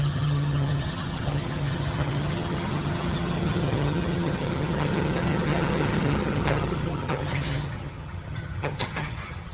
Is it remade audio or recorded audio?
remade